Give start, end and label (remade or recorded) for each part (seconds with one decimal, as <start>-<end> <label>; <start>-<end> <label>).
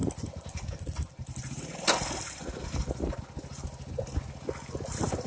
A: 0.0-5.3 recorded